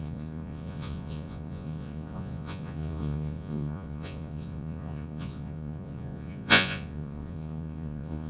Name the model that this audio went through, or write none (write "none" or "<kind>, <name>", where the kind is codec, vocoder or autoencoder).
vocoder, Vocos